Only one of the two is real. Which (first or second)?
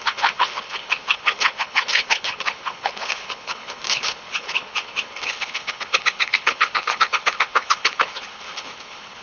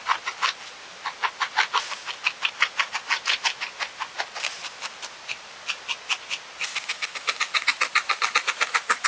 second